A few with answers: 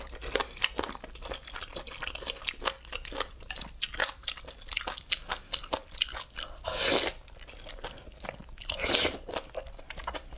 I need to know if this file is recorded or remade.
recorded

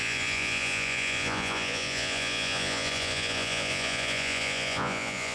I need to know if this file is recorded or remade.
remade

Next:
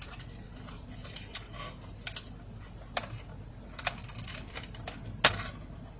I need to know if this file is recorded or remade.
recorded